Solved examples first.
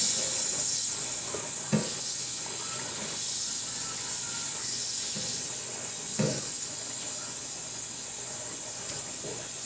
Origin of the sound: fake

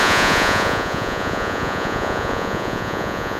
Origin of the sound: fake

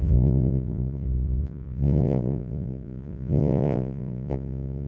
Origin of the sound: fake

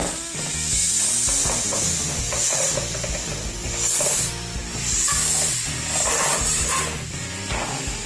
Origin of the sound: real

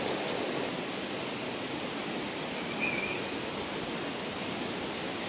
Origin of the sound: real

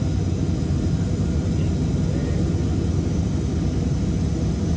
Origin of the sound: real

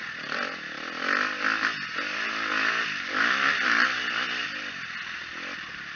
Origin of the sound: real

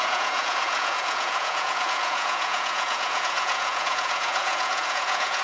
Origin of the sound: fake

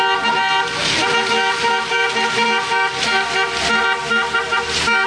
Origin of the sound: real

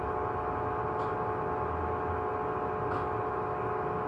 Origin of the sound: real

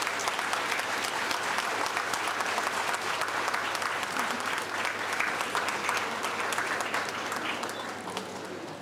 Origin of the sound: real